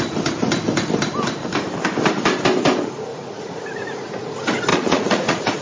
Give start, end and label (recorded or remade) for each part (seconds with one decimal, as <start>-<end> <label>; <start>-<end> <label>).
0.0-3.1 recorded; 3.1-4.3 remade; 4.3-4.7 recorded; 4.7-5.6 remade